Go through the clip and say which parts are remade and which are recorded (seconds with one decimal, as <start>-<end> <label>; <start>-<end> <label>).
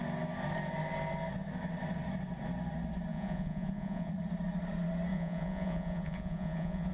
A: 0.0-3.1 recorded; 3.1-4.1 remade; 4.1-5.1 recorded; 5.1-6.9 remade